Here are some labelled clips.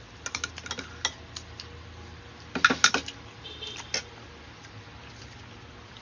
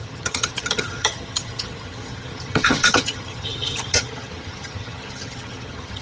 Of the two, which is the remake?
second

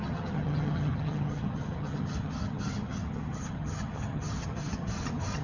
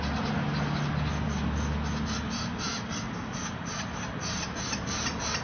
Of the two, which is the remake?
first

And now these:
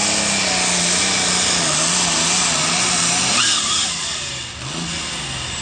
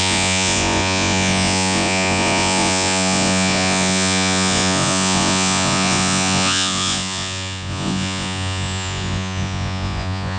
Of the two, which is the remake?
second